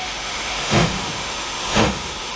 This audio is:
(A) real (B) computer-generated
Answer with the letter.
B